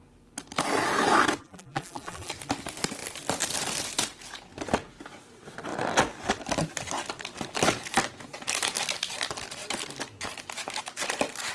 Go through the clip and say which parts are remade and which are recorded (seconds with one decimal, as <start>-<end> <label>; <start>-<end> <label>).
0.0-1.4 recorded; 1.4-2.3 remade; 2.3-11.5 recorded